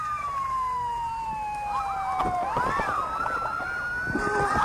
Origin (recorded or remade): recorded